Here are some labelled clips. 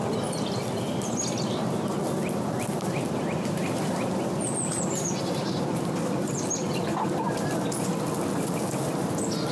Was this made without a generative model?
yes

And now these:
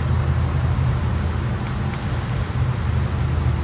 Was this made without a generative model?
yes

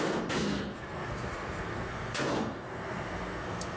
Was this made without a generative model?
no